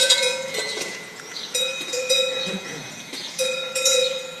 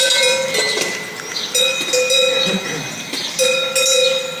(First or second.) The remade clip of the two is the first